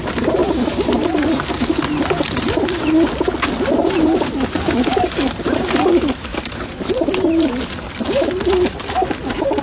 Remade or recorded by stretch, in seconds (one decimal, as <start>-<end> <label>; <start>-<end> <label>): 0.0-3.8 recorded; 3.8-5.0 remade; 5.0-6.3 recorded; 6.3-7.5 remade; 7.5-9.6 recorded